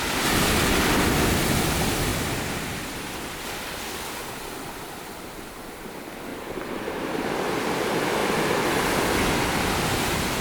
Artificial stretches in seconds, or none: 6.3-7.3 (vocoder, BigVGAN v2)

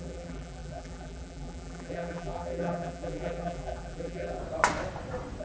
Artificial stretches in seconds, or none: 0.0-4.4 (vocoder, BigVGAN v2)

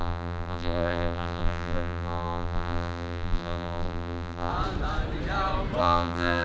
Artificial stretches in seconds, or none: 0.0-4.5 (vocoder, BigVGAN v2); 5.8-6.4